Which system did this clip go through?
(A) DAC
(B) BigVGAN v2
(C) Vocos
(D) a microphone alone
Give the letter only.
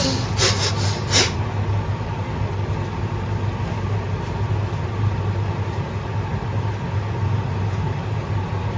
D